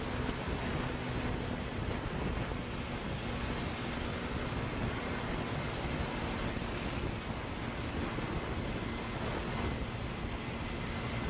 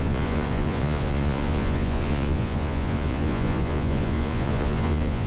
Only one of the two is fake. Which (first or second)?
second